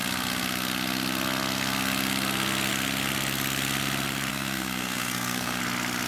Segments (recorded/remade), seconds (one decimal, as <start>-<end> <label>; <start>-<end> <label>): 0.0-4.3 recorded; 4.3-5.6 remade; 5.6-6.1 recorded